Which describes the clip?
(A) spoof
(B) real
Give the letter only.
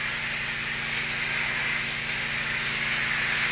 B